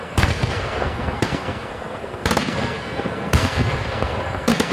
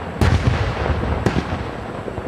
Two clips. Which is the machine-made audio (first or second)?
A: first